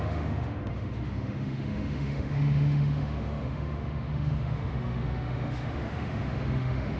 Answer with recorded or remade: remade